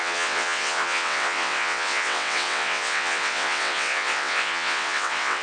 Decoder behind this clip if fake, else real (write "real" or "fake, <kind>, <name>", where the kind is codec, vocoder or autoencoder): fake, vocoder, WaveNeXt